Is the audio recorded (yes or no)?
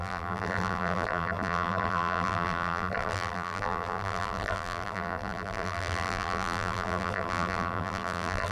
no